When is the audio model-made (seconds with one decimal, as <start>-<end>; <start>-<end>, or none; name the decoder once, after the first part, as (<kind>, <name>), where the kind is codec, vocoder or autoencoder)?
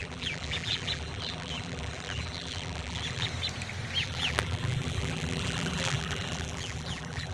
0.0-3.3 (vocoder, BigVGAN v2); 4.0-7.3